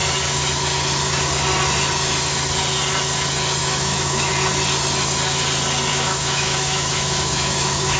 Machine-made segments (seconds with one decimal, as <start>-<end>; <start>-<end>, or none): 3.6-4.3; 5.9-8.0